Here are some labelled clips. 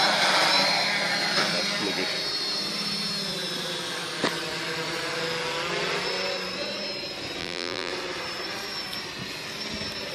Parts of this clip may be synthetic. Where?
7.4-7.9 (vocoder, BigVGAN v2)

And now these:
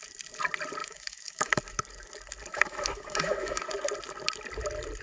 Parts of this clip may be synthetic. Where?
0.8-1.6 (autoencoder, DAC-VAE); 2.5-3.6

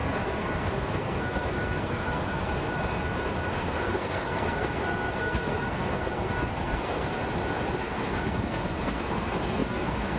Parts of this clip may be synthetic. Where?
0.0-2.5 (codec, SNAC); 3.5-7.2; 7.8-10.2